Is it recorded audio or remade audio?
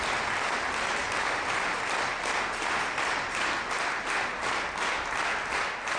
recorded